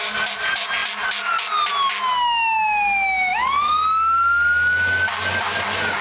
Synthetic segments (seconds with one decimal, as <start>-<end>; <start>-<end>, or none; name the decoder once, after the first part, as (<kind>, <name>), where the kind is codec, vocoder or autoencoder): none